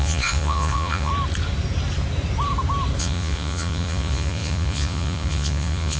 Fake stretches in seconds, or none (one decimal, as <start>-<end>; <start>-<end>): 0.0-1.1; 3.0-6.0